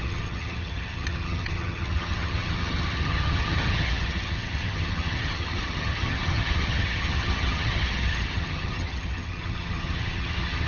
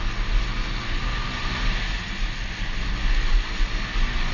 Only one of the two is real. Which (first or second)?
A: second